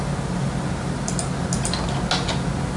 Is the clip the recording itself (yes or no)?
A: yes